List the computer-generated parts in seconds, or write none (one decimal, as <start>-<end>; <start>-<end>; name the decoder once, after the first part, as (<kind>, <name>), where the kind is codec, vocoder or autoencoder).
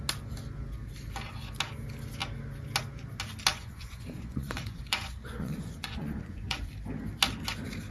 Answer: 3.5-6.7 (vocoder, Vocos)